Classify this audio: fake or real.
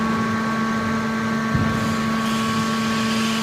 real